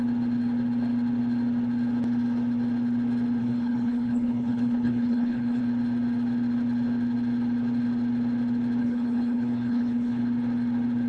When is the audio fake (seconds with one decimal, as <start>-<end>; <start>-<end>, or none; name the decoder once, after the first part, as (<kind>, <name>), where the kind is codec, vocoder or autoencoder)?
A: 3.4-5.6 (codec, HILCodec); 8.8-10.2

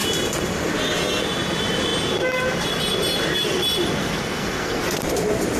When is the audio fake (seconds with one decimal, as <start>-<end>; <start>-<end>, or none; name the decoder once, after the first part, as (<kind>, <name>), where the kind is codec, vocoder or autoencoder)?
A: 4.0-4.8 (codec, SNAC)

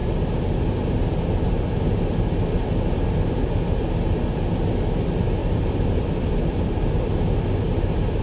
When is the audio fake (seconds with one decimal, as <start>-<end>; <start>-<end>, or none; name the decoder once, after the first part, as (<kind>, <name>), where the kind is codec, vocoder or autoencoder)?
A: 5.4-7.0 (vocoder, BigVGAN v2)

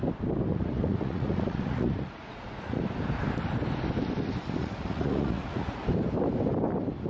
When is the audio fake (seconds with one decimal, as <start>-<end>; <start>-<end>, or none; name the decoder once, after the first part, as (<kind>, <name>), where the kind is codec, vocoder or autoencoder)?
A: 0.5-2.8 (vocoder, Vocos); 4.6-5.8

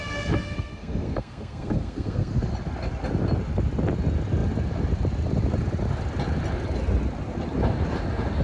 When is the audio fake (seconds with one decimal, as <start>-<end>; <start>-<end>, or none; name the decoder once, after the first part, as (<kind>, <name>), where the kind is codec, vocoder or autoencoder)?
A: 0.0-2.5 (codec, SNAC)

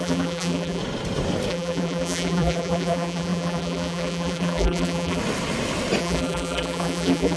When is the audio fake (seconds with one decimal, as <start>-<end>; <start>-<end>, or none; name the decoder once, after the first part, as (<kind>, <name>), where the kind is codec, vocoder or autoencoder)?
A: 0.0-0.8 (vocoder, BigVGAN v2); 1.5-5.2; 6.0-7.4

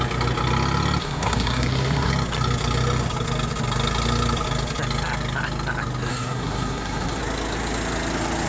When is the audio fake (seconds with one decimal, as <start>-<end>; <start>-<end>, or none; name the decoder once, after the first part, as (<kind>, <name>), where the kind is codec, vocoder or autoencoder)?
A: 1.0-2.1 (codec, SNAC); 6.1-7.2

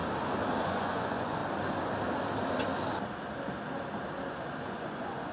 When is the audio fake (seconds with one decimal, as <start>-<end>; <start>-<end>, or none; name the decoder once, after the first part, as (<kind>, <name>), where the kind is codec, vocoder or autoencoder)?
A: 0.6-1.4 (vocoder, Vocos); 4.6-5.3